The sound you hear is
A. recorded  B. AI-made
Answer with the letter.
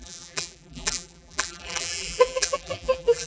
B